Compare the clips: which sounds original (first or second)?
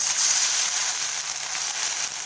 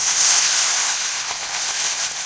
first